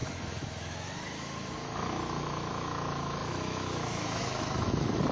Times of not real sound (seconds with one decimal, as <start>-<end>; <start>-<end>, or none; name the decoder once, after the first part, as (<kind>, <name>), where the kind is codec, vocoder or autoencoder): 0.0-5.1 (autoencoder, DAC-VAE)